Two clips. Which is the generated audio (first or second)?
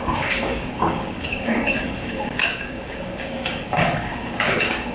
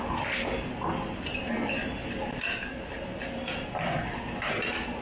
first